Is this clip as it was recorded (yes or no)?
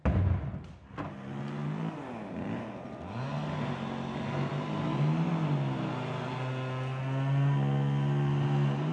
yes